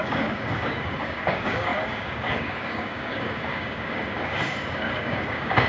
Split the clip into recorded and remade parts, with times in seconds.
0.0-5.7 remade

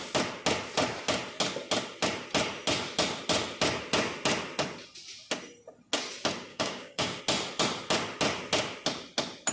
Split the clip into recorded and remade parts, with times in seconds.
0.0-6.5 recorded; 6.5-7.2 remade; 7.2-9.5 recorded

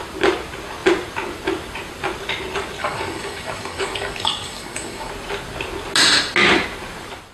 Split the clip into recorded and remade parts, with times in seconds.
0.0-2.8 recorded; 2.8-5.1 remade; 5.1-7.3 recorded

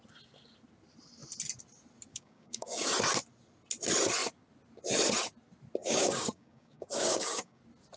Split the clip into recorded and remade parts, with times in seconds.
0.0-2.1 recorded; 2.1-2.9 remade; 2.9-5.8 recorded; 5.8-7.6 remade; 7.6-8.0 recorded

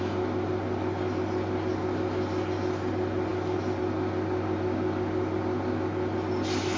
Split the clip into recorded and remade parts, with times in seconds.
0.0-6.8 recorded

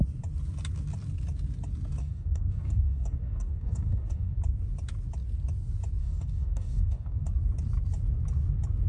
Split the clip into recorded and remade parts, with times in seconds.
0.0-2.0 recorded; 2.0-4.4 remade; 4.4-6.0 recorded; 6.0-7.3 remade; 7.3-8.9 recorded

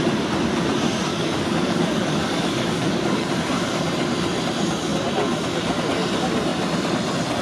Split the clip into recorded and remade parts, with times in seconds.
0.0-1.1 recorded; 1.1-3.3 remade; 3.3-7.4 recorded